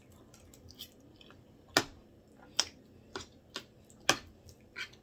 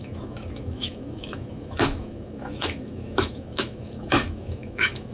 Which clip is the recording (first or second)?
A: first